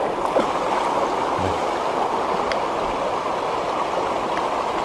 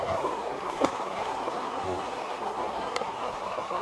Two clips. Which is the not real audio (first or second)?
second